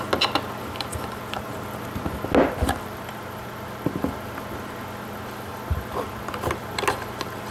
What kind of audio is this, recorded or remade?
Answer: recorded